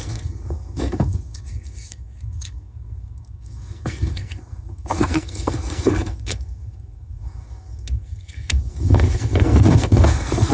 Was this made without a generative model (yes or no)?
no